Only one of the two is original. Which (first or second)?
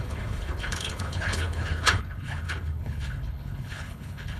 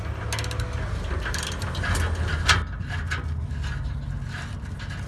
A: second